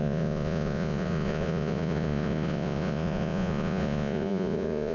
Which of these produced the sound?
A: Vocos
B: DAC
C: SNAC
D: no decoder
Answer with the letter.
A